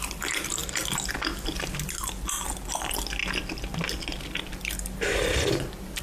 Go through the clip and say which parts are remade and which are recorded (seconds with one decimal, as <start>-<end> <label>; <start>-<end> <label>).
0.0-6.0 recorded